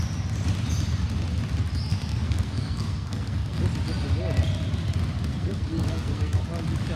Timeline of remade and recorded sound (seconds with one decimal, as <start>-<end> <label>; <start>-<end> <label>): 0.0-1.9 recorded; 1.9-3.6 remade; 3.6-5.3 recorded; 5.3-6.4 remade; 6.4-7.0 recorded